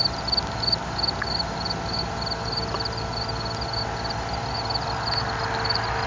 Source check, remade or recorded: recorded